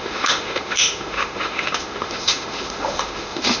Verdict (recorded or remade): remade